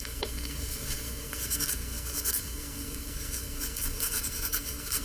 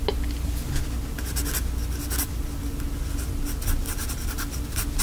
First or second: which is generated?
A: first